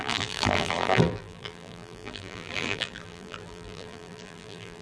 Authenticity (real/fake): fake